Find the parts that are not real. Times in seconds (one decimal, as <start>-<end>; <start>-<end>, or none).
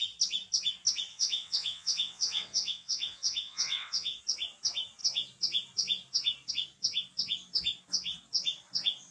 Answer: 1.1-4.2